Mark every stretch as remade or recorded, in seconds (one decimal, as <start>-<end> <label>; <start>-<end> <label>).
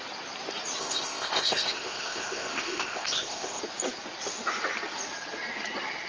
0.0-0.8 recorded; 0.8-3.6 remade; 3.6-6.1 recorded